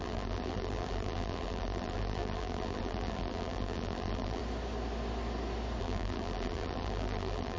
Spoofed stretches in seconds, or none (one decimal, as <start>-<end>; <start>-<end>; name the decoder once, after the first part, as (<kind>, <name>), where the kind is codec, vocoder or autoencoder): 0.0-4.4 (vocoder, BigVGAN v2); 5.8-7.6